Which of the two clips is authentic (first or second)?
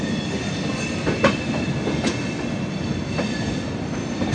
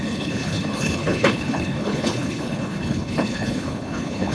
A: first